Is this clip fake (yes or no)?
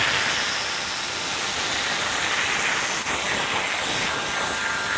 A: no